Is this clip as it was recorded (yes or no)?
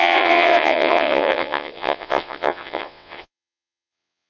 no